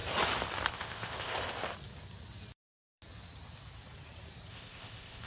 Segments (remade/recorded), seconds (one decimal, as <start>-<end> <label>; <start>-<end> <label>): 0.0-0.7 recorded; 0.7-1.3 remade; 1.3-4.5 recorded; 4.5-5.3 remade